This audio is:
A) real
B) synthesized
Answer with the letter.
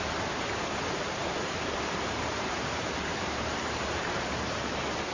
B